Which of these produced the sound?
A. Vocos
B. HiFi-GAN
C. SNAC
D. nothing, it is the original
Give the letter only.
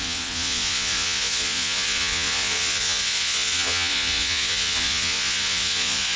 A